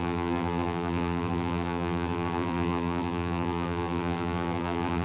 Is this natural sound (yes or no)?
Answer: no